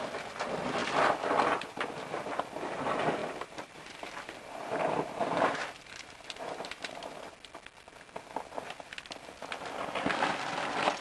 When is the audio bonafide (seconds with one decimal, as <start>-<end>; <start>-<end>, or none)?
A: 0.0-3.2; 7.1-11.0